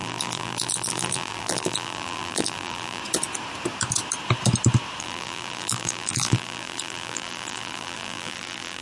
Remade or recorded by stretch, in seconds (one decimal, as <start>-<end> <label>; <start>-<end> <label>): 0.0-3.0 remade; 3.0-5.0 recorded; 5.0-8.8 remade